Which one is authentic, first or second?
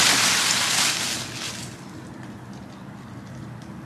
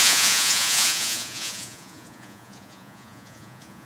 first